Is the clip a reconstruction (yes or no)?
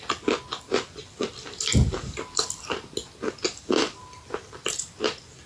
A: no